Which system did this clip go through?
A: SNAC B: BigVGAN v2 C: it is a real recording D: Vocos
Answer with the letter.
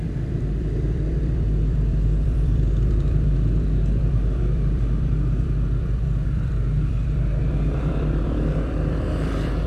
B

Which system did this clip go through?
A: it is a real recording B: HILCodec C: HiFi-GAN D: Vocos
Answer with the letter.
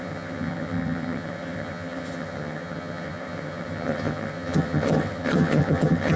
C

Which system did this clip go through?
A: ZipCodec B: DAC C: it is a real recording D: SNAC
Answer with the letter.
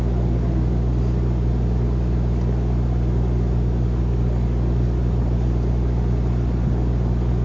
C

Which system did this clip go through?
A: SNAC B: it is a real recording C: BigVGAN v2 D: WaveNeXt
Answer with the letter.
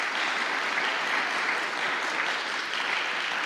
B